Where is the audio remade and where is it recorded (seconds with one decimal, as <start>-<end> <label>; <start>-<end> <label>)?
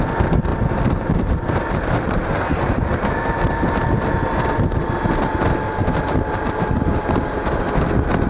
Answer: 0.0-0.5 recorded; 0.5-5.0 remade; 5.0-5.8 recorded; 5.8-7.0 remade; 7.0-8.3 recorded